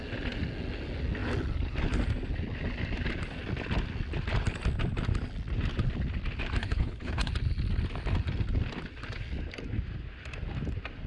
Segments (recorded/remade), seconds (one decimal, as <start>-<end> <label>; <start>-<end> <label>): 0.0-6.6 recorded; 6.6-7.3 remade; 7.3-11.1 recorded